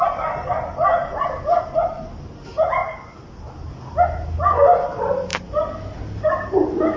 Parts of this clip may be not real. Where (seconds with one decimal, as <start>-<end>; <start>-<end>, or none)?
none